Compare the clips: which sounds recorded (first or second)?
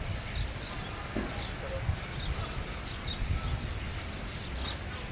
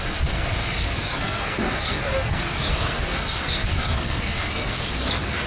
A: first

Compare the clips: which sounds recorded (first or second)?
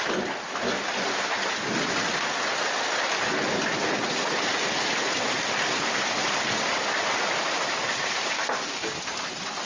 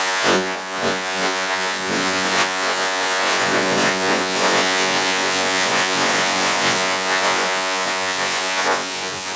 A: first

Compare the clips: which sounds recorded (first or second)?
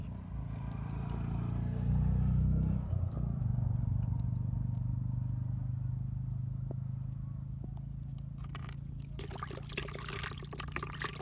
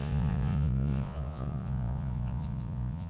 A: first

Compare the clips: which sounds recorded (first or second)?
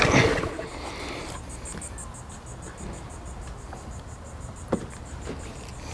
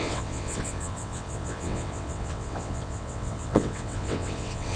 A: first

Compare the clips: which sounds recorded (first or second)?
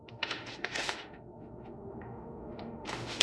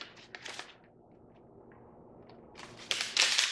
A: second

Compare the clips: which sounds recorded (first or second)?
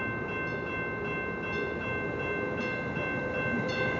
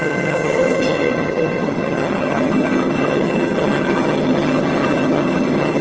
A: first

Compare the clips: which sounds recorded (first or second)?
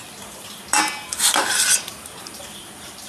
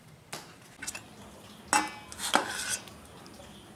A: second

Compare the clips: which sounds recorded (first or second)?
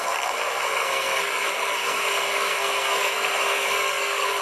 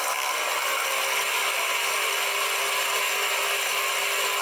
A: second